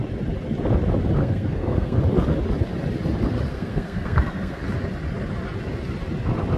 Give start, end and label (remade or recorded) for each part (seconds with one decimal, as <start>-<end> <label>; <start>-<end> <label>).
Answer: 0.0-1.2 recorded; 1.2-2.0 remade; 2.0-3.5 recorded; 3.5-4.6 remade; 4.6-6.6 recorded